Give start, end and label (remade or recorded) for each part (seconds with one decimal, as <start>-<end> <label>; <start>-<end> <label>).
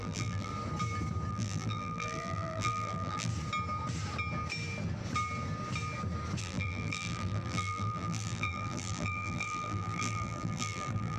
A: 0.0-0.5 remade; 0.5-1.3 recorded; 1.3-3.3 remade; 3.3-6.4 recorded; 6.4-11.2 remade